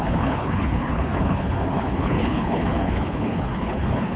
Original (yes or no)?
no